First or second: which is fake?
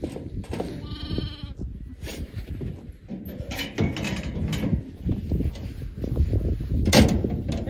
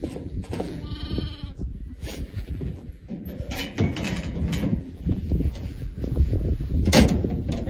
second